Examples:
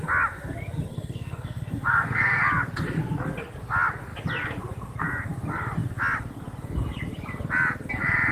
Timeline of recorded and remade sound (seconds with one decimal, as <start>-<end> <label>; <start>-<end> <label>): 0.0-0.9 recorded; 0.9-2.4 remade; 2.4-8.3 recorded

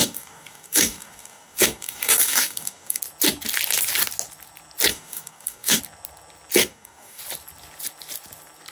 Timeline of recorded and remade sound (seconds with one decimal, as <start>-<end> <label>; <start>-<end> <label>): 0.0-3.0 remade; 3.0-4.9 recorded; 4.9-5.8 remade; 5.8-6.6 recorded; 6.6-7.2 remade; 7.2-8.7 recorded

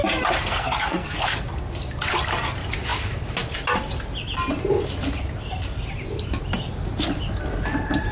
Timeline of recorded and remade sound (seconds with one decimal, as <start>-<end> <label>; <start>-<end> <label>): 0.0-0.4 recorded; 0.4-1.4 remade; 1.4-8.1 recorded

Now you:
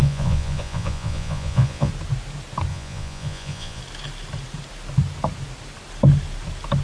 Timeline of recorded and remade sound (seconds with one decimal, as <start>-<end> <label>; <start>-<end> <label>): 0.0-1.9 remade; 1.9-2.7 recorded; 2.7-3.8 remade; 3.8-6.8 recorded

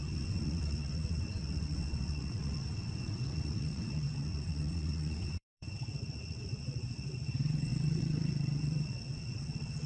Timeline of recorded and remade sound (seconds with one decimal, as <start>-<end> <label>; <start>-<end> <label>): 0.0-9.9 remade

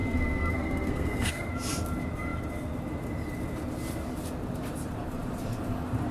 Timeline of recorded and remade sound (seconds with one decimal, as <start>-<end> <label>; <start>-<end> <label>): 0.0-1.5 remade; 1.5-6.1 recorded

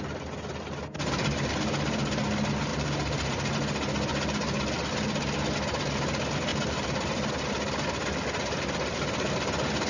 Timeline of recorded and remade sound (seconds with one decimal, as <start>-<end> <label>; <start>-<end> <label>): 0.0-2.7 recorded; 2.7-3.5 remade; 3.5-6.5 recorded; 6.5-7.3 remade; 7.3-9.9 recorded

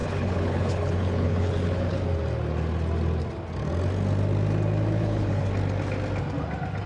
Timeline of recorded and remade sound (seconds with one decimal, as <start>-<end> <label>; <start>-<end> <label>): 0.0-2.0 remade; 2.0-5.0 recorded; 5.0-5.5 remade; 5.5-6.9 recorded